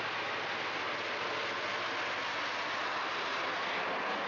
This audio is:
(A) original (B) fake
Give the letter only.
A